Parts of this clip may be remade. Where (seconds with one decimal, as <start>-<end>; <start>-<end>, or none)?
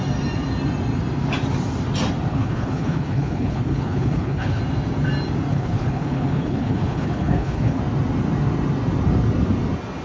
2.3-4.6; 5.5-7.8